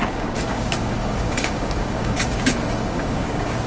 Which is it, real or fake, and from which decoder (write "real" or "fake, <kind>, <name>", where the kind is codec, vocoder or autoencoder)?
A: fake, codec, DAC